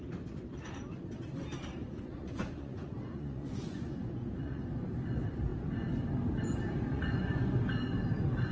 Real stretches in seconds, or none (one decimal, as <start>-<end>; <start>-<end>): 0.0-1.8; 4.6-6.9; 7.6-8.5